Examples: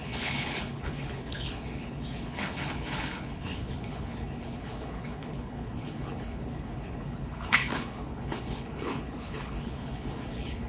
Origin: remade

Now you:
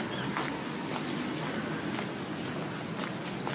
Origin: recorded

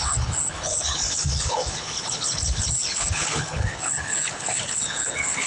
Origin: remade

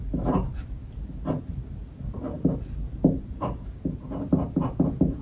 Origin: recorded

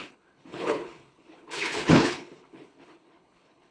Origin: remade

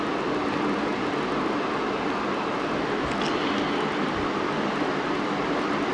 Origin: recorded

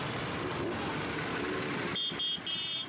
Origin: recorded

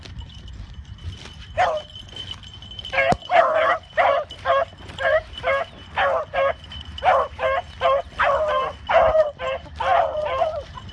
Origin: recorded